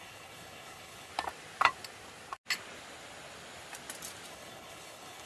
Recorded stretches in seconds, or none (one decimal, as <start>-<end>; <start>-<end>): 1.1-4.3